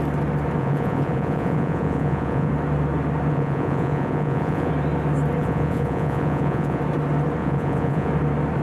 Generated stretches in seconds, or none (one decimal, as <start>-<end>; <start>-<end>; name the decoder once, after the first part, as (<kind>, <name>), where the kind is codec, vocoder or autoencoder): 0.6-2.5 (vocoder, Vocos); 3.3-4.7; 5.4-6.8; 7.4-8.1